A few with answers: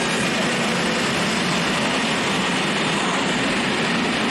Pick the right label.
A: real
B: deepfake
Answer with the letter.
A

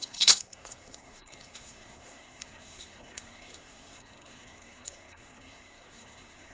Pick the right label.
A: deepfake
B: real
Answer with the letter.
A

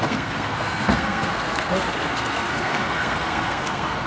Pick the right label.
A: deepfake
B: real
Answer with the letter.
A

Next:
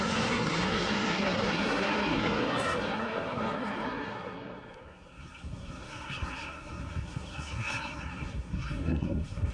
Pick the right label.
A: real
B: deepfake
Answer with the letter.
B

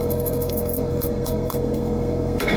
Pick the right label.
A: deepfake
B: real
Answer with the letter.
A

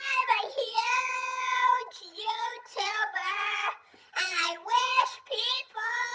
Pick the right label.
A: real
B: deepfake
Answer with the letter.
B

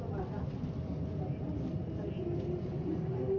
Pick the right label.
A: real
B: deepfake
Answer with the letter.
A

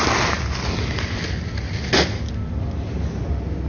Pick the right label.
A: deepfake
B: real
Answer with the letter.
B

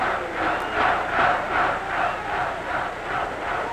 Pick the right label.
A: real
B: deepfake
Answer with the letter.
A